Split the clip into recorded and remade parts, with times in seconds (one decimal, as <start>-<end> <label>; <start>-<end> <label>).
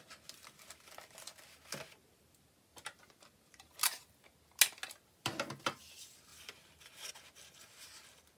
0.0-8.4 recorded